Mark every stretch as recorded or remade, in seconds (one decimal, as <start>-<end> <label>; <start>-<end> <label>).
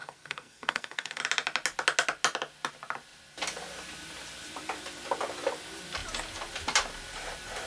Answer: 0.0-1.2 remade; 1.2-7.7 recorded